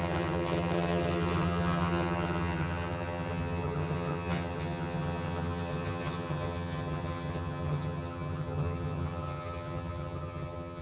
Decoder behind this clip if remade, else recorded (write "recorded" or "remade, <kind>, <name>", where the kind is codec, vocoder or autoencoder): remade, vocoder, HiFi-GAN